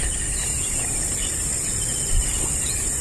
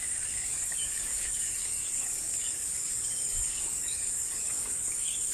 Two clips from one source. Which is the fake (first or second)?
second